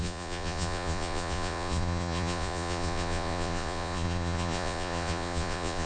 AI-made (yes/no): yes